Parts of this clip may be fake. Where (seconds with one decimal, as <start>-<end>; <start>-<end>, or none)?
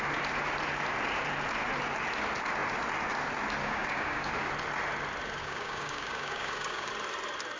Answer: 3.6-4.5; 5.4-6.9